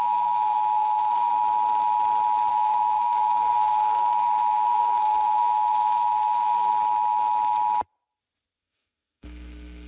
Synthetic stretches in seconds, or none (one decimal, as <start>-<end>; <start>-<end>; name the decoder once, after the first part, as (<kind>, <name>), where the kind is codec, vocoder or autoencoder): 0.0-1.3 (codec, SNAC); 2.5-6.7; 8.6-9.9